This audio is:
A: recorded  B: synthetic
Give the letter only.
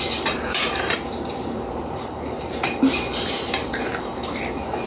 B